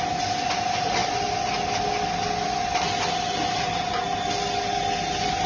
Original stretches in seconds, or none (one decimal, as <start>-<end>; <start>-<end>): 0.0-5.5